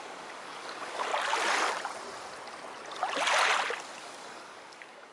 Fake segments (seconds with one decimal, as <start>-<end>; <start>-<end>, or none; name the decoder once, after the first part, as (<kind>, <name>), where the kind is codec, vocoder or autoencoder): 0.0-1.1 (codec, DAC); 4.0-5.1